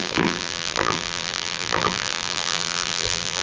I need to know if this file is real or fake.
fake